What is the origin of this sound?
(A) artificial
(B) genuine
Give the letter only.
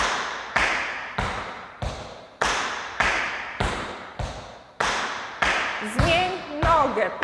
A